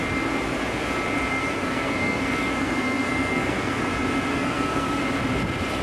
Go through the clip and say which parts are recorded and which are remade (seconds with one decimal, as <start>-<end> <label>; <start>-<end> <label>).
0.0-1.3 recorded; 1.3-3.8 remade; 3.8-4.3 recorded; 4.3-5.0 remade; 5.0-5.8 recorded